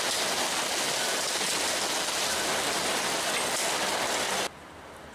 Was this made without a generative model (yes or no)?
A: yes